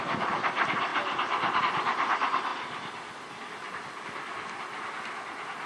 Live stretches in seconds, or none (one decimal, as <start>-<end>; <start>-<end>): 0.0-5.7